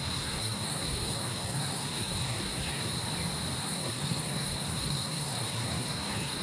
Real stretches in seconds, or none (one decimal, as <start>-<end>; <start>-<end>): 2.9-3.6